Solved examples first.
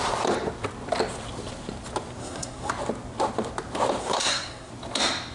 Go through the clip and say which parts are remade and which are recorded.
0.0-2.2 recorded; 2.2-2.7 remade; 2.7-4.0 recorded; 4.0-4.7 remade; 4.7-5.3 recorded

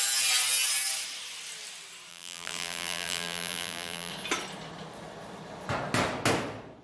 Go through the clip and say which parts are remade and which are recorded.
0.0-2.1 recorded; 2.1-4.1 remade; 4.1-6.8 recorded